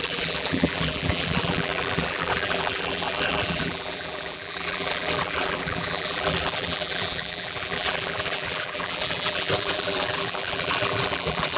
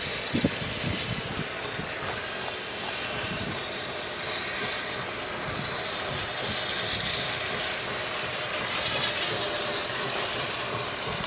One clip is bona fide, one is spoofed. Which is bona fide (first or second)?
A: second